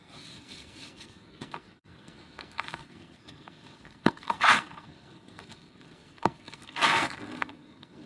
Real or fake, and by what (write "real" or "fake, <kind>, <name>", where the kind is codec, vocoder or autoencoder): fake, codec, SNAC